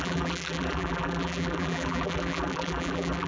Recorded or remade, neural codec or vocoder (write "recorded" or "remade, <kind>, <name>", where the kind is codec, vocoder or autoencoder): remade, vocoder, BigVGAN v2